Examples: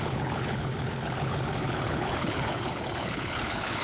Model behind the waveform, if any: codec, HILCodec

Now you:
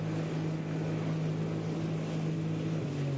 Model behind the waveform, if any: none